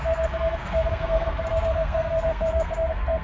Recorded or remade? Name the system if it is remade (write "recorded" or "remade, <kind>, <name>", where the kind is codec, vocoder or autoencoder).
remade, codec, SNAC